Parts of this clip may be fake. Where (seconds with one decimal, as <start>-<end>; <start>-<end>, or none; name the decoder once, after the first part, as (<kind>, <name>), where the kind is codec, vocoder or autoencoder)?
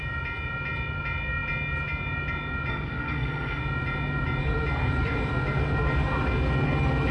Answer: 2.7-3.6 (codec, SNAC)